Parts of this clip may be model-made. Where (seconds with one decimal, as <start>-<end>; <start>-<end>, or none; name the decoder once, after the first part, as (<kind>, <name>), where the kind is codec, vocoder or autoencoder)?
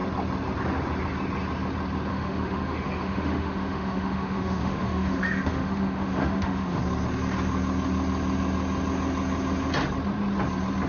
2.1-6.8 (autoencoder, DAC-VAE)